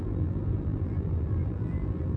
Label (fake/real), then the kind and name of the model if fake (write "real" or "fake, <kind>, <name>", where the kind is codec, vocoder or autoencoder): fake, vocoder, BigVGAN v2